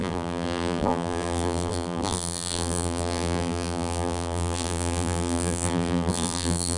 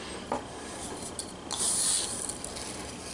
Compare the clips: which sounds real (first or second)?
second